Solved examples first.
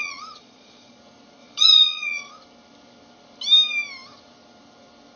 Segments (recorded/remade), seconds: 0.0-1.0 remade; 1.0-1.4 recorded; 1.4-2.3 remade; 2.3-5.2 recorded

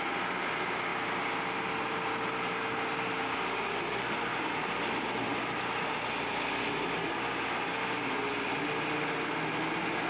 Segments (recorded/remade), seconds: 0.0-10.1 recorded